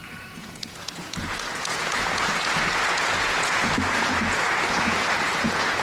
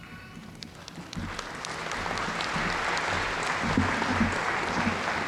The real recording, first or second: second